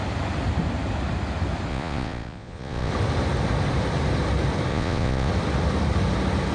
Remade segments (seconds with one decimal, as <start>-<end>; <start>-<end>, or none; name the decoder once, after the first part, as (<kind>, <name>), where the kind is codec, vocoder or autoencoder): 1.7-2.9 (vocoder, Vocos); 4.7-5.3